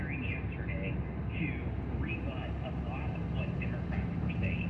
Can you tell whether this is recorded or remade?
recorded